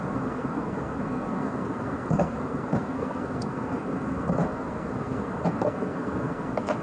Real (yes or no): no